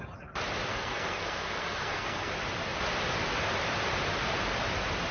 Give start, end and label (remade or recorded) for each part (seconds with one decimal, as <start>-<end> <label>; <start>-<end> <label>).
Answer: 0.0-0.7 recorded; 0.7-2.3 remade; 2.3-5.1 recorded